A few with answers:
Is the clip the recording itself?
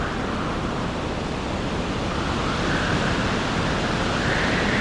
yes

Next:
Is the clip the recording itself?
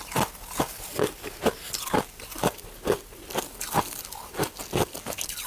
yes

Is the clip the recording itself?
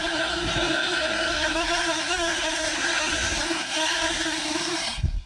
no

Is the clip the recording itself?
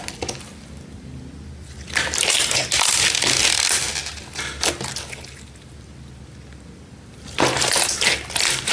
yes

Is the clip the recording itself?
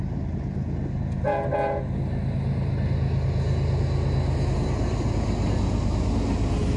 yes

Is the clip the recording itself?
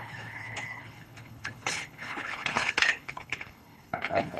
no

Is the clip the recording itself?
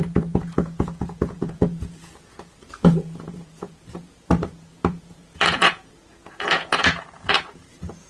no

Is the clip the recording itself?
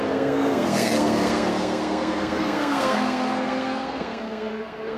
no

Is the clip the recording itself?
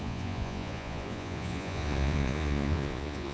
no